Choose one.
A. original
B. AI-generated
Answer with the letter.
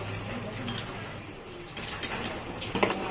A